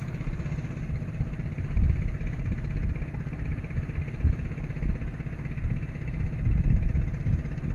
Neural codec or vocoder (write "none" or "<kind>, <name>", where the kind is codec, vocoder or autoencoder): none